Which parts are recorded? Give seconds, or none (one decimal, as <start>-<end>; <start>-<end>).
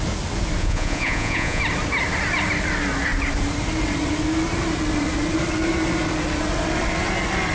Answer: 0.0-0.6; 1.6-7.5